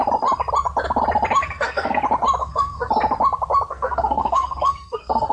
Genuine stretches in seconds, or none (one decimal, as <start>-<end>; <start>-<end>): 0.0-1.4; 2.0-2.4; 2.9-3.7